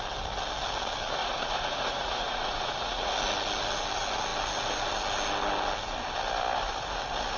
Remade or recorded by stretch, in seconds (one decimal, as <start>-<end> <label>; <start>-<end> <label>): 0.0-1.2 recorded; 1.2-3.1 remade; 3.1-7.4 recorded